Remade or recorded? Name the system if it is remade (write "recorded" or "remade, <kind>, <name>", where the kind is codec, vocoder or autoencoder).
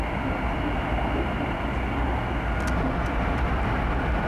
recorded